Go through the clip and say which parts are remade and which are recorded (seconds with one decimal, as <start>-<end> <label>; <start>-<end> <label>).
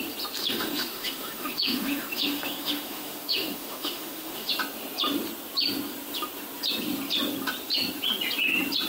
0.0-0.4 recorded; 0.4-4.5 remade; 4.5-8.9 recorded